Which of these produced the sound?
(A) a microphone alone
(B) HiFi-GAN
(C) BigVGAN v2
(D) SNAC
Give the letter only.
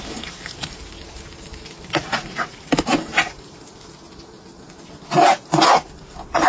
A